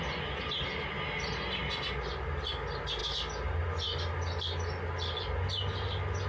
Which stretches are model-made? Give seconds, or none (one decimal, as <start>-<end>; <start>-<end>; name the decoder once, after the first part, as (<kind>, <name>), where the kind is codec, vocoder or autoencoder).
none